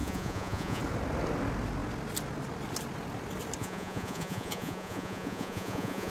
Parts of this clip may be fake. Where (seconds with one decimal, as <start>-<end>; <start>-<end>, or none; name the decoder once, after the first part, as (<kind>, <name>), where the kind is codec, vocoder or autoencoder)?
0.0-0.8 (vocoder, Vocos); 3.6-6.1